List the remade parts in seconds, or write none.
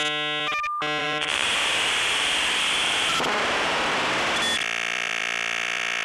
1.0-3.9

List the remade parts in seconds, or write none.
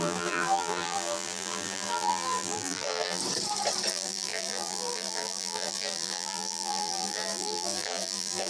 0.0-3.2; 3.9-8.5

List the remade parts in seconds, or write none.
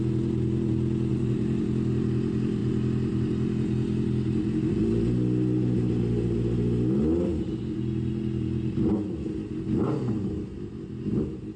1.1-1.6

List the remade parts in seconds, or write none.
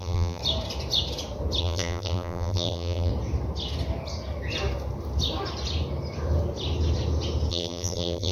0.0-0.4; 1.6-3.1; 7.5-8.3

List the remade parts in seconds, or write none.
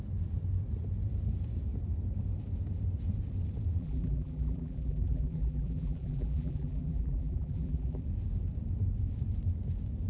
3.8-8.0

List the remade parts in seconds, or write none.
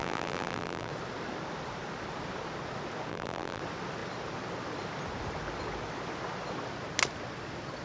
0.0-0.9; 3.1-3.6